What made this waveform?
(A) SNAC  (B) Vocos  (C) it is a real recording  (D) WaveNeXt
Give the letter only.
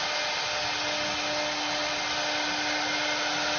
C